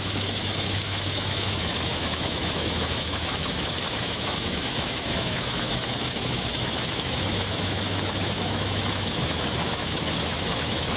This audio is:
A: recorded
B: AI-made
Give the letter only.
B